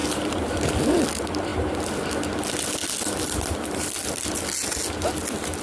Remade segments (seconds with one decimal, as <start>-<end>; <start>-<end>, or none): none